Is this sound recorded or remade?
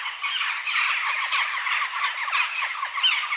recorded